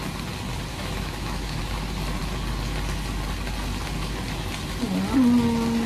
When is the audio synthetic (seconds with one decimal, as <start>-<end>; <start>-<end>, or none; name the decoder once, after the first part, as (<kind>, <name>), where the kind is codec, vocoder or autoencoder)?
0.7-1.6 (autoencoder, DAC-VAE)